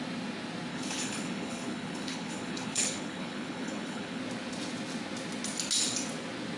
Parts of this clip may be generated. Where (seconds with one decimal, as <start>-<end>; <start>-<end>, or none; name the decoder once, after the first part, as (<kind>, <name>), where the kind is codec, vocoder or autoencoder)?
0.7-4.2 (codec, HILCodec)